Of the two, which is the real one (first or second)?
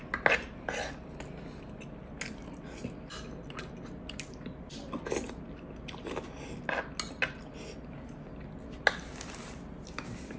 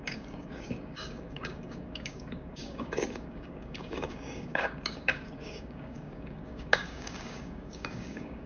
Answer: first